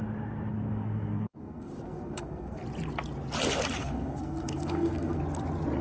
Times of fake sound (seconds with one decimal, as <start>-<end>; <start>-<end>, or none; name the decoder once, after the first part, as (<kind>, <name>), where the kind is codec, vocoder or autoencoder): 0.5-2.6 (codec, SNAC); 3.8-5.2